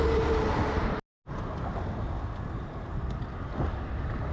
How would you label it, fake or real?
real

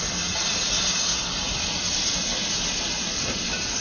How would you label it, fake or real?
real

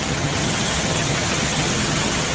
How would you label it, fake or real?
fake